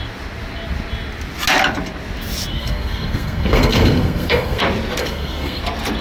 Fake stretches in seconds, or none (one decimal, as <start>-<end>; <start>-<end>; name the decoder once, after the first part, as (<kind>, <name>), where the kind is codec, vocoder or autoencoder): 2.5-4.6 (codec, SNAC); 5.0-5.6